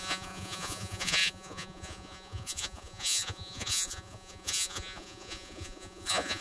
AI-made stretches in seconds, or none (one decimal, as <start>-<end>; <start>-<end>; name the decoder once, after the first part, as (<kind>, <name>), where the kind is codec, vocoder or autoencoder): 0.0-6.4 (vocoder, Vocos)